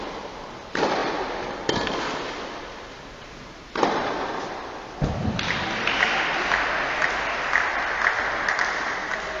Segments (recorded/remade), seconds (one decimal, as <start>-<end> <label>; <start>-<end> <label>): 0.0-1.0 remade; 1.0-2.6 recorded; 2.6-9.4 remade